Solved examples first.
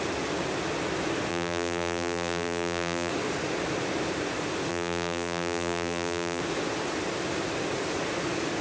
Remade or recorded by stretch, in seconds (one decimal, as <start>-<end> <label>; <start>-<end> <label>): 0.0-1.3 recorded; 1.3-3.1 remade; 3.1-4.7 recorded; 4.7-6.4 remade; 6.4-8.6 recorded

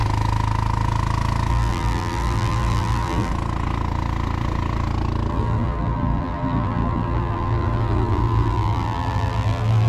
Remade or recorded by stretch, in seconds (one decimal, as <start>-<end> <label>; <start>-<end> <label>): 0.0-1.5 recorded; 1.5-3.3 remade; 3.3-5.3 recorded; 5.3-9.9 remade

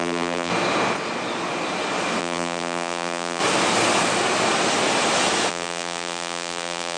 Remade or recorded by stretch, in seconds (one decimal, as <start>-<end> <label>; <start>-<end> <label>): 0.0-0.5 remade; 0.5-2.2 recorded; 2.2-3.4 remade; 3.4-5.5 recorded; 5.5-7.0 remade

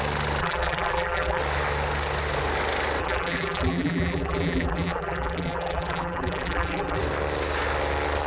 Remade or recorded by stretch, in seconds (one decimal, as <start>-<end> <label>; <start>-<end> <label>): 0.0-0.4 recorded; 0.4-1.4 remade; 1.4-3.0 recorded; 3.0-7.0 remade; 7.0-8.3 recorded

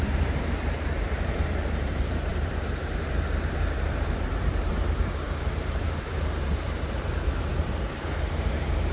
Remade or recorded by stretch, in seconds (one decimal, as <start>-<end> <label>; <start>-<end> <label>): 0.0-7.5 remade; 7.5-8.2 recorded; 8.2-8.9 remade

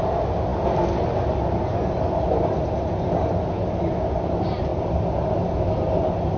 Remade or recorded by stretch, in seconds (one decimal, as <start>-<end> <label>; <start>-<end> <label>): 0.0-4.7 recorded; 4.7-6.0 remade; 6.0-6.4 recorded

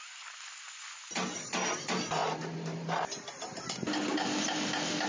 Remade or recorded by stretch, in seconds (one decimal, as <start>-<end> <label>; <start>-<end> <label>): 0.0-5.1 recorded